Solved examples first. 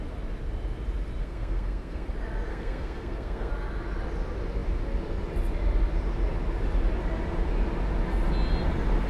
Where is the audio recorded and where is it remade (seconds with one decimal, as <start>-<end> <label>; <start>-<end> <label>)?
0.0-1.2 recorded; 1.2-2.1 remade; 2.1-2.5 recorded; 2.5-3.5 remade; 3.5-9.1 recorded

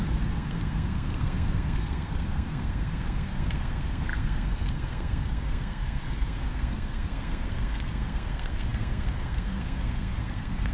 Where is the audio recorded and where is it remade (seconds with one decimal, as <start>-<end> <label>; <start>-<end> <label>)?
0.0-10.7 remade

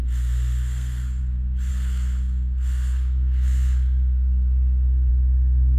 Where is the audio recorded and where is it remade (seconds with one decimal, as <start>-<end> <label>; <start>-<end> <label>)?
0.0-1.2 remade; 1.2-1.7 recorded; 1.7-5.1 remade; 5.1-5.8 recorded

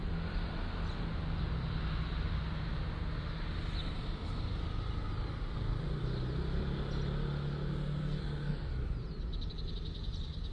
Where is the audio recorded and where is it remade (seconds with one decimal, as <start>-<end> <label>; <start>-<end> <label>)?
0.0-8.0 recorded; 8.0-8.7 remade; 8.7-10.5 recorded

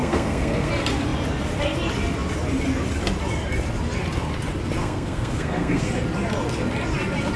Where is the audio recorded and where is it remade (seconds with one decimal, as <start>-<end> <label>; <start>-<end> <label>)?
0.0-0.7 remade; 0.7-4.8 recorded; 4.8-5.9 remade; 5.9-7.4 recorded

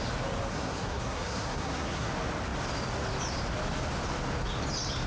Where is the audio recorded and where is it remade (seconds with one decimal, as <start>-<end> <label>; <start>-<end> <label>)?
0.0-0.5 recorded; 0.5-2.1 remade; 2.1-5.1 recorded